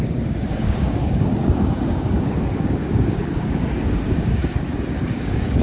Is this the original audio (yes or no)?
no